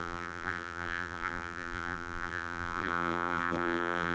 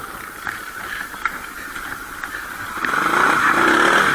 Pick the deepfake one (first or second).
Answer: first